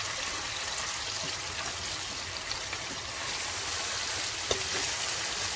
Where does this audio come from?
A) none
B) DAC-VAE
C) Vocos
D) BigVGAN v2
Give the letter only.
A